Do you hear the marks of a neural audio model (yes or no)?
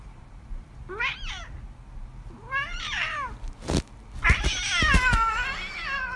no